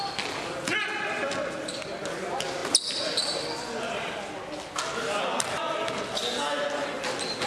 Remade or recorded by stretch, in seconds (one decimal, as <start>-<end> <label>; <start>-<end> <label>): 0.0-7.5 recorded